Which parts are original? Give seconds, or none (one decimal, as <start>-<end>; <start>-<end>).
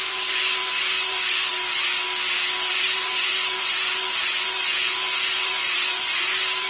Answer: 1.5-2.7